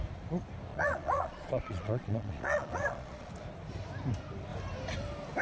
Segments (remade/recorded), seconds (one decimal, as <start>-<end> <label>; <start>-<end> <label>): 0.0-0.7 recorded; 0.7-3.3 remade; 3.3-5.4 recorded